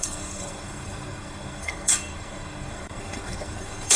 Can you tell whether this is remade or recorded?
remade